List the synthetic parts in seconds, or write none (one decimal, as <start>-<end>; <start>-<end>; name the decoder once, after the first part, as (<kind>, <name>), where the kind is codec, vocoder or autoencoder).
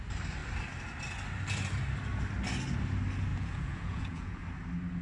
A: 3.3-4.4 (vocoder, Vocos)